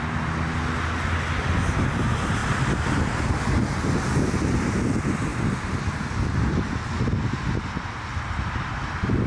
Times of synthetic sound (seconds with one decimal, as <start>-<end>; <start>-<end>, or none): 8.1-9.3